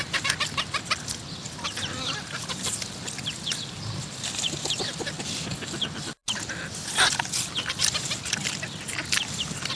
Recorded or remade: recorded